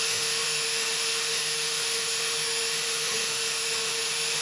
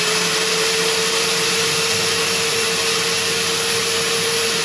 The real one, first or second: second